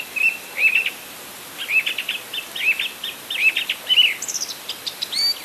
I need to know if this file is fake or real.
real